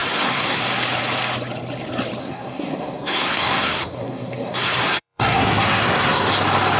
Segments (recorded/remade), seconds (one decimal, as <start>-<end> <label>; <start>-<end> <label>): 0.0-0.6 remade; 0.6-2.2 recorded; 2.2-6.3 remade; 6.3-6.8 recorded

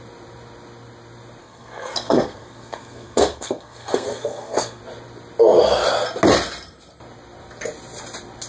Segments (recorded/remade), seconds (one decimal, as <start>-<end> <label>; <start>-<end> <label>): 0.0-1.4 recorded; 1.4-4.8 remade; 4.8-8.5 recorded

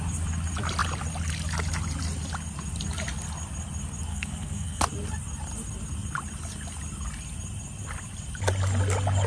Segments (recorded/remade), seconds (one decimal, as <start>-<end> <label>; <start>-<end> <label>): 0.0-4.1 recorded; 4.1-4.8 remade; 4.8-9.3 recorded

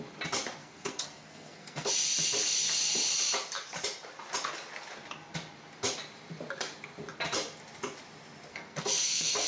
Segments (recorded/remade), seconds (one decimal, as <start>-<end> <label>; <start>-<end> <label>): 0.0-0.6 recorded; 0.6-1.9 remade; 1.9-8.5 recorded; 8.5-9.5 remade

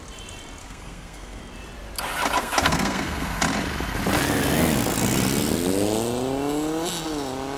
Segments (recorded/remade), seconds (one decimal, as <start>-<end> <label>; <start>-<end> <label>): 0.0-0.6 recorded; 0.6-1.4 remade; 1.4-2.4 recorded; 2.4-3.4 remade; 3.4-7.6 recorded

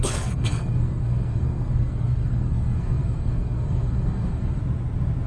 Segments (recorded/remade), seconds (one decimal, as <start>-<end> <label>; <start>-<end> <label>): 0.0-4.6 remade; 4.6-5.3 recorded